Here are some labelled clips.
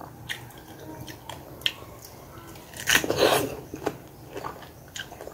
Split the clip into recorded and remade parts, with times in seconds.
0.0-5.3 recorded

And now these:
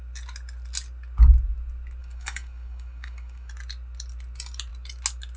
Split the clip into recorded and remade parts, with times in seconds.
0.0-2.0 recorded; 2.0-3.5 remade; 3.5-5.4 recorded

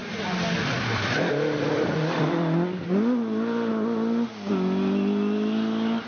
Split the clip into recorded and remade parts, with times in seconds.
0.0-3.7 remade; 3.7-6.1 recorded

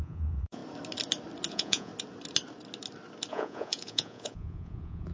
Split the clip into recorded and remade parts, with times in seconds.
0.0-0.6 remade; 0.6-1.5 recorded; 1.5-1.9 remade; 1.9-3.3 recorded; 3.3-5.1 remade

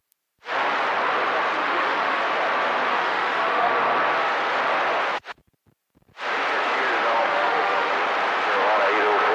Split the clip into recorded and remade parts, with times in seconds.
0.0-1.6 recorded; 1.6-2.2 remade; 2.2-2.9 recorded; 2.9-3.7 remade; 3.7-7.2 recorded; 7.2-7.9 remade; 7.9-9.3 recorded